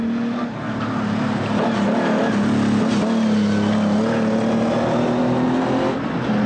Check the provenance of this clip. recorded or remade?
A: recorded